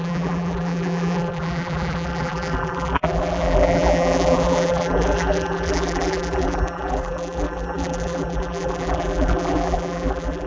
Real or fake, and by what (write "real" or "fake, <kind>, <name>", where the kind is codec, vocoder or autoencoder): fake, vocoder, BigVGAN v2